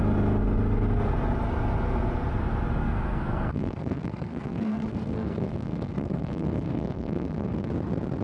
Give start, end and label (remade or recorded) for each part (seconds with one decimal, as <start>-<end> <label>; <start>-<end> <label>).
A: 0.0-2.8 recorded; 2.8-7.7 remade; 7.7-8.2 recorded